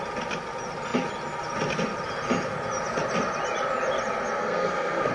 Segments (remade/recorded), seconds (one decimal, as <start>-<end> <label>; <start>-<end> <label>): 0.0-4.4 recorded; 4.4-5.1 remade